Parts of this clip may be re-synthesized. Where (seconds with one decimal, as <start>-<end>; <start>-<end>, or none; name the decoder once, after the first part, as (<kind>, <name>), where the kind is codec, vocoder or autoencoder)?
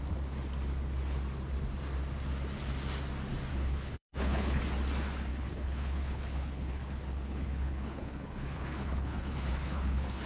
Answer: 3.5-4.6 (codec, HILCodec); 5.3-10.3